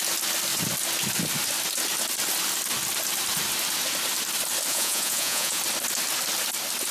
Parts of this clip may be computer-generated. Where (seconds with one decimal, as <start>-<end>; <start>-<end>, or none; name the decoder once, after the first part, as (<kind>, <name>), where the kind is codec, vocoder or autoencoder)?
4.7-5.6 (vocoder, Vocos)